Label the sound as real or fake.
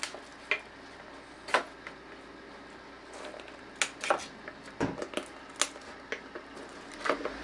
real